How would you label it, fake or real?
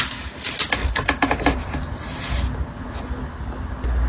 real